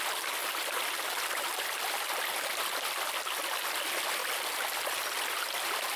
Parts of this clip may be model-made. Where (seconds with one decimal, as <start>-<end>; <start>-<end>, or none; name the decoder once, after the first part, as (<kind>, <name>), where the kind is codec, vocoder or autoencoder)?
0.4-3.1 (vocoder, BigVGAN v2); 4.2-6.0